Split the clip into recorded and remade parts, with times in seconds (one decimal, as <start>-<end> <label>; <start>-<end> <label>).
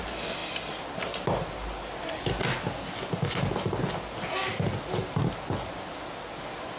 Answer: 0.0-6.8 recorded